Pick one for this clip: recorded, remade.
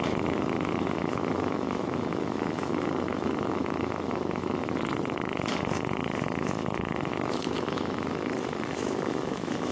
remade